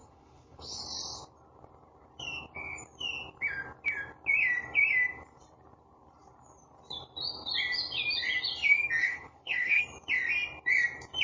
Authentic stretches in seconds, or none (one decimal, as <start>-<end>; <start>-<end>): 0.8-9.0; 9.8-11.2